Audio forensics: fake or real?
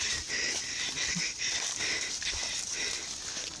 real